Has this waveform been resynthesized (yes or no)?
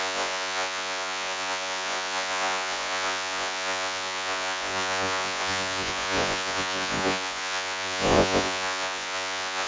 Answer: yes